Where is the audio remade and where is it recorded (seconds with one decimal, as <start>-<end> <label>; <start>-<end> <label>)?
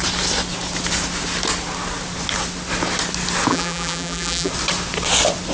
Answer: 0.0-3.5 recorded; 3.5-4.5 remade; 4.5-5.5 recorded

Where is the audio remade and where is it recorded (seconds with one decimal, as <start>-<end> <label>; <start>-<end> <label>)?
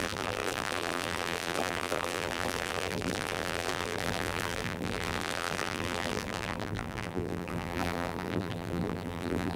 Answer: 0.0-9.6 remade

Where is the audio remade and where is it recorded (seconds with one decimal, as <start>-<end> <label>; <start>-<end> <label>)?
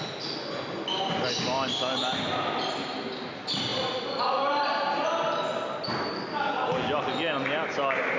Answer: 0.0-8.2 recorded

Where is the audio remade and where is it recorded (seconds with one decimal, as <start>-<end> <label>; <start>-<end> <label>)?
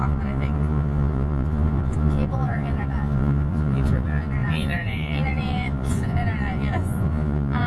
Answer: 0.0-7.7 remade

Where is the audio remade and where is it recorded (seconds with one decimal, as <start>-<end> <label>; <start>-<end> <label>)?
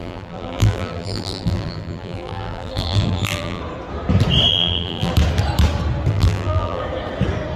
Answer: 0.0-3.6 remade; 3.6-4.5 recorded; 4.5-5.1 remade; 5.1-6.1 recorded; 6.1-6.8 remade; 6.8-7.6 recorded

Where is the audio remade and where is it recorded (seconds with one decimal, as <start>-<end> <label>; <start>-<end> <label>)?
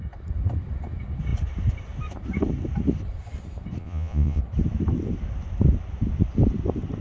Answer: 0.0-3.8 recorded; 3.8-4.4 remade; 4.4-7.0 recorded